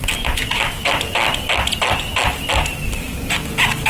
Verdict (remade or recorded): recorded